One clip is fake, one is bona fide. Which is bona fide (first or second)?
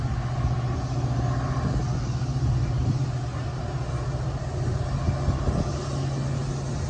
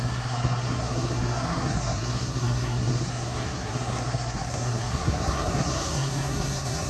first